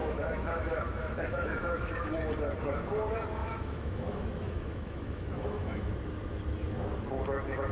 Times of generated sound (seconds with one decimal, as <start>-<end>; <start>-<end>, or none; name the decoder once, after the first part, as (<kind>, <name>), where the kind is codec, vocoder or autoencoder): 0.0-2.1 (autoencoder, DAC-VAE); 3.4-5.9